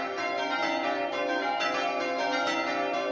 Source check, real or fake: real